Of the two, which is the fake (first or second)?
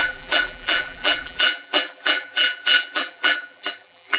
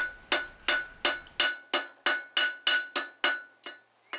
first